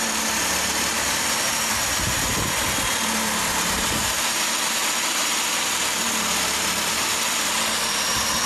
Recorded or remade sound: remade